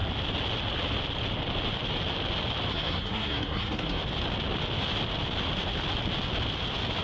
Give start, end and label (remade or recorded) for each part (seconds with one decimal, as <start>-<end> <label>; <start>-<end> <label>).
0.0-2.7 recorded; 2.7-4.0 remade; 4.0-7.0 recorded